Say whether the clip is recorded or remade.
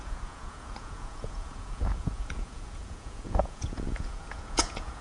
remade